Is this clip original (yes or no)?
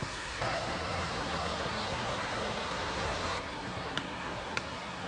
no